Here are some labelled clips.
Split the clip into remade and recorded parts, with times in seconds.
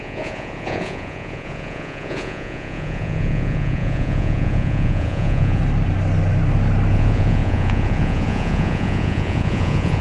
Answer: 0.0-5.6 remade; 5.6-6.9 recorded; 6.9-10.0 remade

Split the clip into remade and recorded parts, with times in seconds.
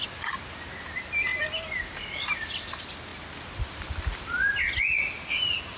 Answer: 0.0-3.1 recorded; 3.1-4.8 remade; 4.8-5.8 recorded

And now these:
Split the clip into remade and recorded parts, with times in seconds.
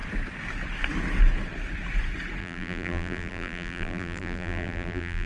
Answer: 0.0-2.4 recorded; 2.4-5.3 remade